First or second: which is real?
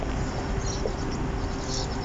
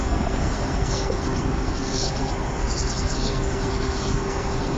first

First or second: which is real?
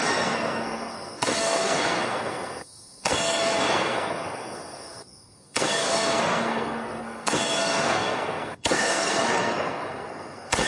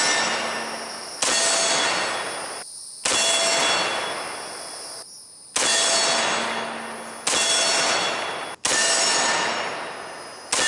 second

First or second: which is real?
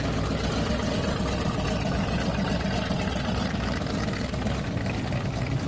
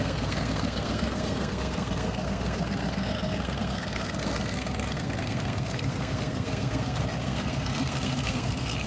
first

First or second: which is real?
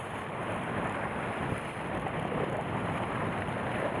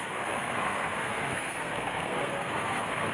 first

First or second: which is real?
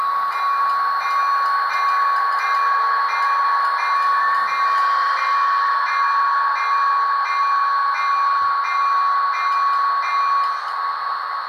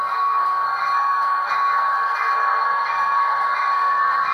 first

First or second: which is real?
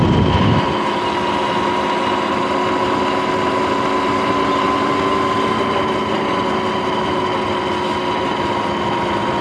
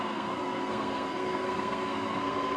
first